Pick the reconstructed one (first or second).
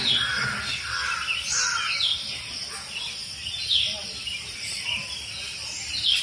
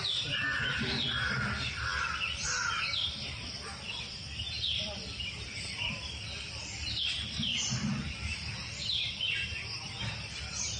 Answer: second